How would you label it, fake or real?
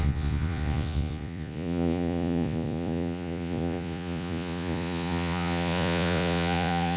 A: fake